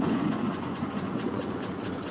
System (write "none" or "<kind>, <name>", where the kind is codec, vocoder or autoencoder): vocoder, Vocos